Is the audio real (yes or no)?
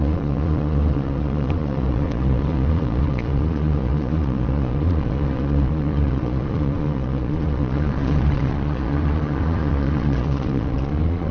no